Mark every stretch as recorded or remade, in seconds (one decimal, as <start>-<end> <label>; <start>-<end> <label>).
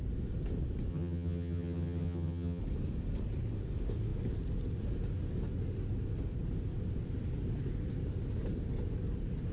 0.0-0.9 recorded; 0.9-2.6 remade; 2.6-9.5 recorded